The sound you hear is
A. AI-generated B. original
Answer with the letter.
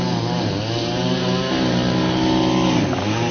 B